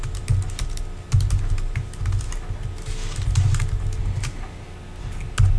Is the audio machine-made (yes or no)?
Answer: no